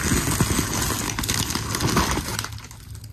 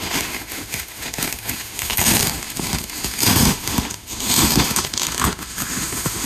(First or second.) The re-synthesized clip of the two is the second